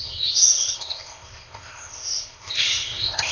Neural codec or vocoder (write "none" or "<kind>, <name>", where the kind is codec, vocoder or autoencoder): codec, ZipCodec